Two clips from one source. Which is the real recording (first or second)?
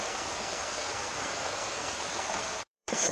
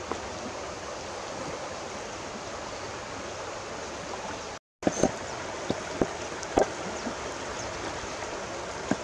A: second